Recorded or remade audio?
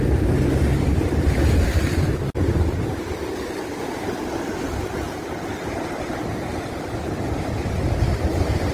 recorded